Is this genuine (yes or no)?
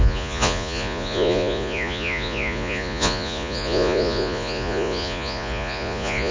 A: no